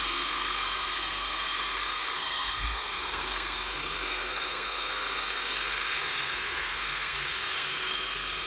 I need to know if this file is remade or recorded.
remade